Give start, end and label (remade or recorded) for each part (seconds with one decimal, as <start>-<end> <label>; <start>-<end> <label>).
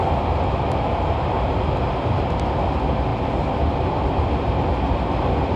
0.0-5.6 recorded